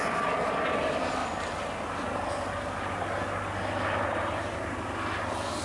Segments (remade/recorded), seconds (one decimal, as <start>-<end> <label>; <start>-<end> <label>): 0.0-5.6 recorded